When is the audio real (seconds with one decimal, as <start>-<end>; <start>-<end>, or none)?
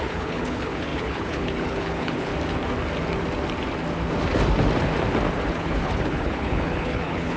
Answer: 2.3-5.5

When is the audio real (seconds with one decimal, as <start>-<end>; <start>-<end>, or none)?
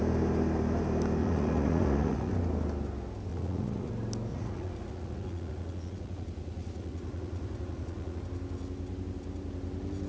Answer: 0.0-1.2; 2.3-3.3; 3.9-4.3; 8.2-10.1